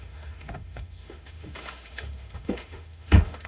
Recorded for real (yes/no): no